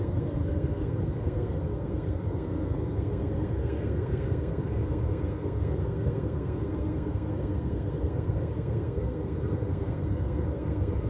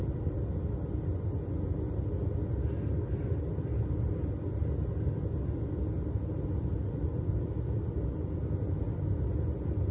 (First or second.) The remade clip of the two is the first